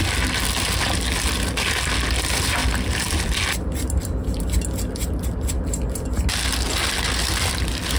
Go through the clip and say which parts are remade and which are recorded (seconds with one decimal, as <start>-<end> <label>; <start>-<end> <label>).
0.0-2.6 recorded; 2.6-4.4 remade; 4.4-8.0 recorded